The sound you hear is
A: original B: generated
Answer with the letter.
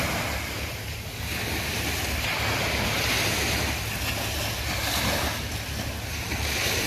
A